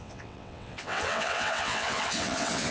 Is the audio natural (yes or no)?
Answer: no